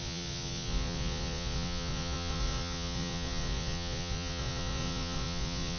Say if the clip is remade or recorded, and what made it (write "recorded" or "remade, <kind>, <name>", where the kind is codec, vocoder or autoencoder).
remade, vocoder, Vocos